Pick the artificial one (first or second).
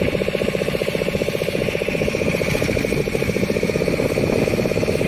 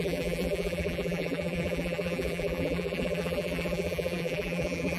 second